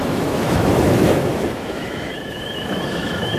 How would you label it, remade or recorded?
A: remade